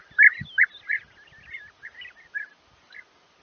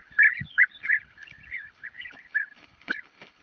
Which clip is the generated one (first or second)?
second